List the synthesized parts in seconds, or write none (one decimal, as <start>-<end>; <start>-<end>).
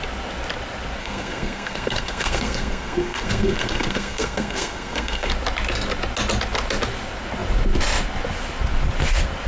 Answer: 1.0-5.3